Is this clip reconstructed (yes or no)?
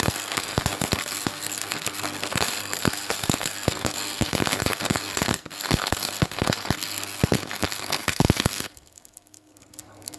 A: yes